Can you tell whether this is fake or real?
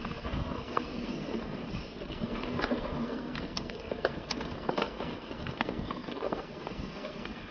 fake